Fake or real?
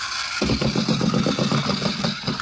real